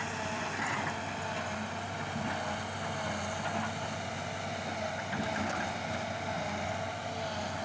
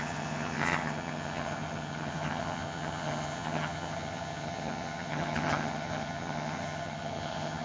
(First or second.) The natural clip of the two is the first